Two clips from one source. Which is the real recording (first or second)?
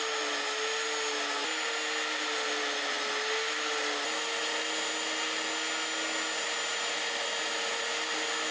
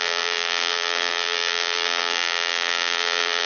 first